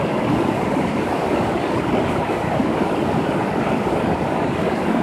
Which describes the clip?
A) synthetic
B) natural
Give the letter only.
A